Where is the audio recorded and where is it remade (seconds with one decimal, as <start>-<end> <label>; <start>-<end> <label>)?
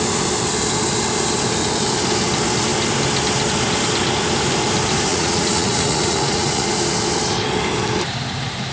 0.0-5.1 recorded; 5.1-6.7 remade; 6.7-8.7 recorded